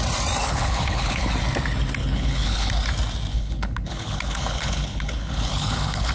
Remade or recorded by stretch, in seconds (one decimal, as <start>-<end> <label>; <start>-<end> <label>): 0.0-0.4 recorded; 0.4-1.3 remade; 1.3-2.0 recorded; 2.0-2.7 remade; 2.7-3.3 recorded; 3.3-6.1 remade